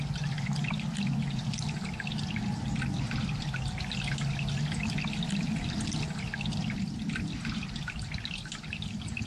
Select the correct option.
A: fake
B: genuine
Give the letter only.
B